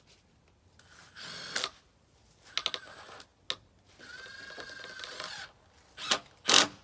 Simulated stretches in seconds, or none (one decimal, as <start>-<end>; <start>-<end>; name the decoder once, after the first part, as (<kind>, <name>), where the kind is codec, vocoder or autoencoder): none